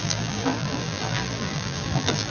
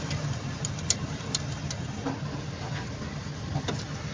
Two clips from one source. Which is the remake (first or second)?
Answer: first